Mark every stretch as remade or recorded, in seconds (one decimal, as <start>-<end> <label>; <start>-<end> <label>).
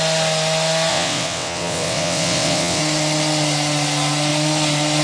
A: 0.0-0.9 recorded; 0.9-2.8 remade; 2.8-5.0 recorded